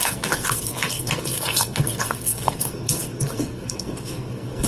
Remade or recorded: remade